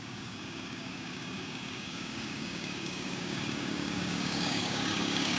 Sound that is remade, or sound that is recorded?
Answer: remade